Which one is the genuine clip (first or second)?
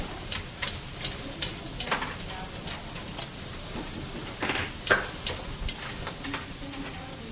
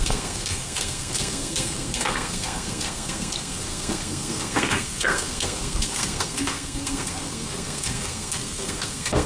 first